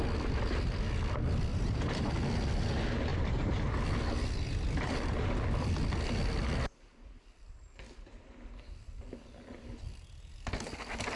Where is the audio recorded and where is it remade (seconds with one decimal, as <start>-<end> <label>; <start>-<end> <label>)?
0.0-1.5 recorded; 1.5-2.1 remade; 2.1-11.2 recorded